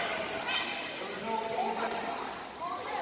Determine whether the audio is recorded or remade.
recorded